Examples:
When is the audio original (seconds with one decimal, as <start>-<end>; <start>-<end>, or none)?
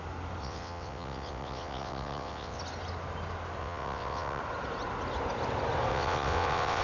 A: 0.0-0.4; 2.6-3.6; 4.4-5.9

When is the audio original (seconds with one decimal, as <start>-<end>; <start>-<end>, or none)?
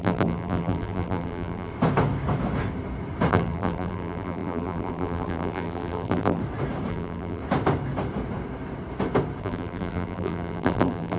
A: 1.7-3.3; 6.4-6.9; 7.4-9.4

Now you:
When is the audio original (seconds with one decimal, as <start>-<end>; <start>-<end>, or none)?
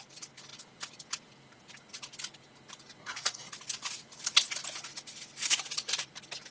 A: 0.0-3.0; 3.5-6.5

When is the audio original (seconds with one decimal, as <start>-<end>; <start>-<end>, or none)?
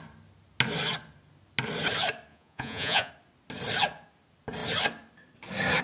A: 0.0-2.3; 3.1-5.8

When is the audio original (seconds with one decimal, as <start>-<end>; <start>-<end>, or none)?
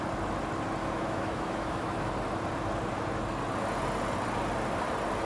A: 0.0-0.8; 2.1-5.3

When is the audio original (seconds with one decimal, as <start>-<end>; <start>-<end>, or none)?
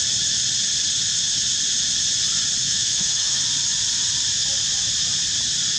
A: 0.0-2.6; 3.4-5.8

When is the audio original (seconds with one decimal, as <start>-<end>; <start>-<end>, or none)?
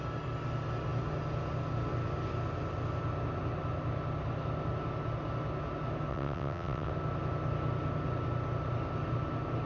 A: 0.0-6.1; 6.9-9.7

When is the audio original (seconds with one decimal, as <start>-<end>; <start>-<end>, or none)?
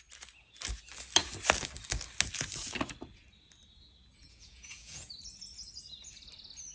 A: 0.0-4.2; 5.1-6.7